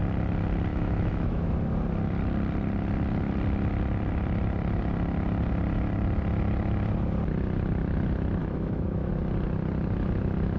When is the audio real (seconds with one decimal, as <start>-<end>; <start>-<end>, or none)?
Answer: 0.0-0.7; 1.5-8.4; 9.1-10.6